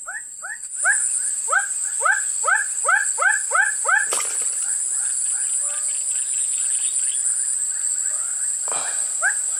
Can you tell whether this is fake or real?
real